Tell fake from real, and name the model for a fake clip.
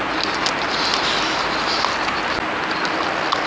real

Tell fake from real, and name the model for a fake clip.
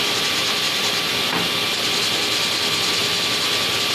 real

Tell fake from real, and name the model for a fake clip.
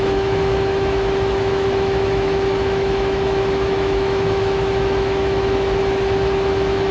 fake, autoencoder, DAC-VAE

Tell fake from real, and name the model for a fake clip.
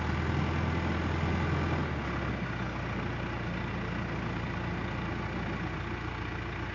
real